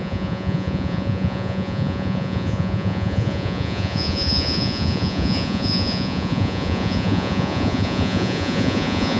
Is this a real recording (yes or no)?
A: no